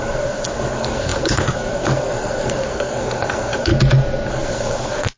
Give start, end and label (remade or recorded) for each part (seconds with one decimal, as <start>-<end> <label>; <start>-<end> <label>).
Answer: 0.0-3.7 remade; 3.7-4.3 recorded; 4.3-5.2 remade

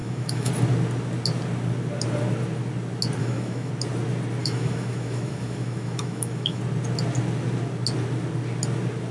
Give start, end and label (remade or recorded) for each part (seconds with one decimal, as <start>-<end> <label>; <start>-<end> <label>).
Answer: 0.0-0.5 remade; 0.5-3.2 recorded; 3.2-3.7 remade; 3.7-4.4 recorded; 4.4-6.6 remade; 6.6-9.1 recorded

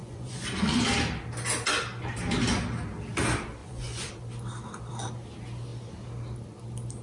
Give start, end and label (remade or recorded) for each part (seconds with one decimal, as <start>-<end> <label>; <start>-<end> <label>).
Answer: 0.0-0.8 remade; 0.8-3.6 recorded; 3.6-4.1 remade; 4.1-7.0 recorded

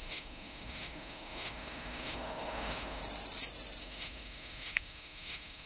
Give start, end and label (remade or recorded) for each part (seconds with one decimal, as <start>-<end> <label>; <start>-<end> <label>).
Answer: 0.0-3.0 remade; 3.0-3.8 recorded; 3.8-5.7 remade